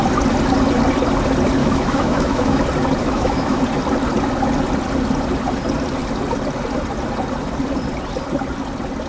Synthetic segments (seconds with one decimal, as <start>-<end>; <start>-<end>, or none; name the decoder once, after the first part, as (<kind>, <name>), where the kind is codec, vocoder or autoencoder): 1.6-2.6 (autoencoder, DAC-VAE); 3.0-3.6

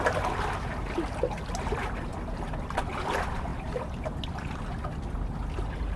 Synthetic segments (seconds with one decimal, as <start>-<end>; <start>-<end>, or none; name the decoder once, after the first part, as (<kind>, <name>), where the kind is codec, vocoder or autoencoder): 3.5-4.2 (vocoder, BigVGAN v2)

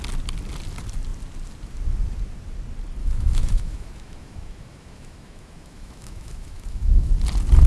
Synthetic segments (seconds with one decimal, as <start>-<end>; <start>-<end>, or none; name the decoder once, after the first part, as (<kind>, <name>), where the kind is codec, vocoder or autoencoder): 3.0-7.1 (autoencoder, DAC-VAE)

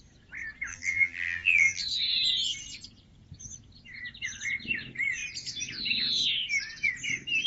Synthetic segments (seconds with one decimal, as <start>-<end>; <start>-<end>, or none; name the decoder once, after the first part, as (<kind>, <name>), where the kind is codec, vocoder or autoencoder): 0.7-1.8 (vocoder, BigVGAN v2)

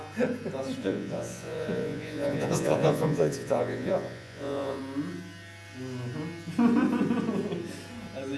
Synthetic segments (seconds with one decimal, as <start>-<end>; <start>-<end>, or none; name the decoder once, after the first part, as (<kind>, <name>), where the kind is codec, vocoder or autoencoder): 0.8-4.8 (vocoder, Vocos)

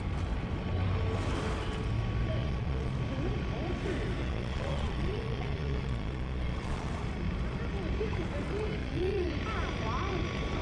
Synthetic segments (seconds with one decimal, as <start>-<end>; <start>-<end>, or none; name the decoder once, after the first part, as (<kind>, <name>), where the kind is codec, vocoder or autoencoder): 2.4-2.9 (vocoder, Vocos); 4.2-6.9; 8.8-9.3

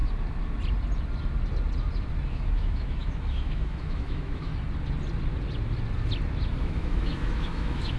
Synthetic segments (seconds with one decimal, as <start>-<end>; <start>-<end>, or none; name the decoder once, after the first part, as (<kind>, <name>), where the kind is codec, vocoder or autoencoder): 2.3-4.5 (autoencoder, DAC-VAE); 6.6-8.0

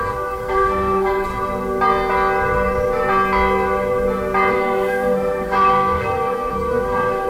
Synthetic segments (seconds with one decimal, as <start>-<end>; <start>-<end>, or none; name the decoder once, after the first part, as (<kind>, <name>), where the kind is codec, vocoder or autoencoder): 0.0-1.3 (codec, SNAC); 4.5-7.3